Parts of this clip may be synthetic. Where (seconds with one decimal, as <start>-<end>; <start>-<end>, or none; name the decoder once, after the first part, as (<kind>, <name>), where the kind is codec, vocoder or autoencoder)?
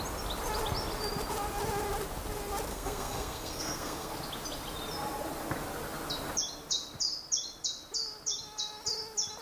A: 2.7-4.1 (codec, SNAC)